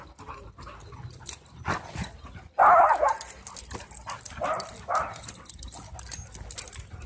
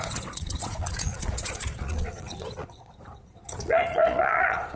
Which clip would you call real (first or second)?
first